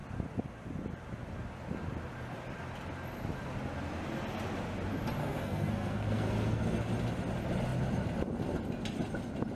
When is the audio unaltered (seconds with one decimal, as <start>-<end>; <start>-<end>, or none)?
0.0-5.2; 6.9-9.6